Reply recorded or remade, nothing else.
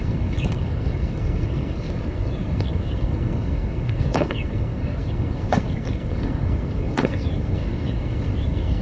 remade